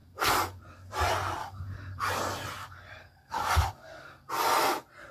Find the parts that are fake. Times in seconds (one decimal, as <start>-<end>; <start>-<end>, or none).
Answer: 0.0-0.6; 1.4-2.1; 2.6-4.3